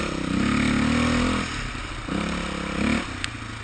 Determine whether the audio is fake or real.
real